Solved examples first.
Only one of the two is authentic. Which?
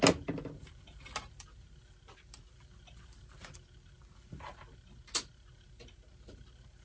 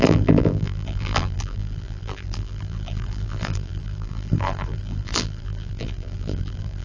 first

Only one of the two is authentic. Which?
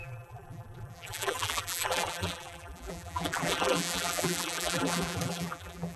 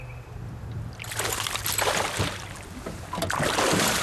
second